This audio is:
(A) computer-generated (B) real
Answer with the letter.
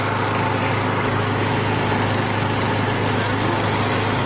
B